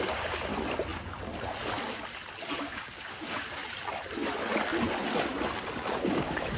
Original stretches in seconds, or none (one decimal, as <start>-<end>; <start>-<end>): 0.5-2.6; 3.6-5.9